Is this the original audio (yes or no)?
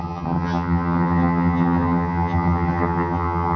no